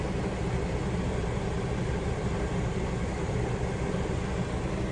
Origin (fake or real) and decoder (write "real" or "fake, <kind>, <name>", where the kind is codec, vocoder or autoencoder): real